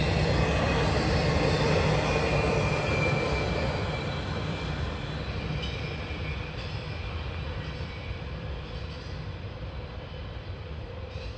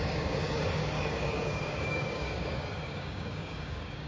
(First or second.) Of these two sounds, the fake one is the second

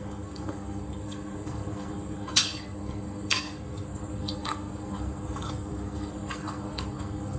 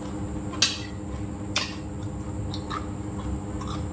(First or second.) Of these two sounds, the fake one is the first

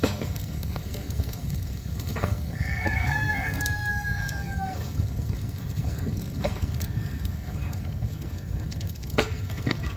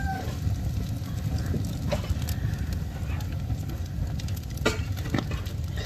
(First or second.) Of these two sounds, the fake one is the first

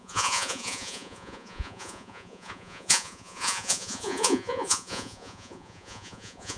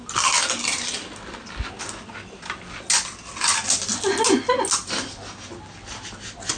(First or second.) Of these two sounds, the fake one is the first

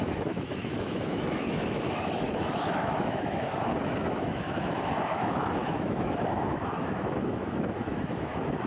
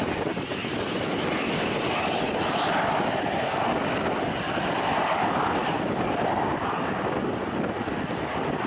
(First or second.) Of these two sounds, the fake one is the first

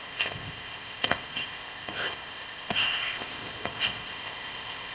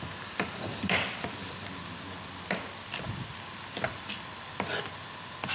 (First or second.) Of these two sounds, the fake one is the first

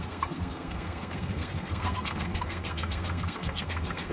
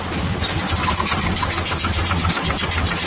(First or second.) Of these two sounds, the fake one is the first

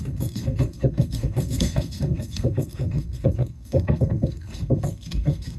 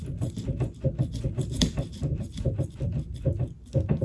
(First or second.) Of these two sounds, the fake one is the first